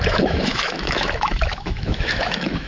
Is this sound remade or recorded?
remade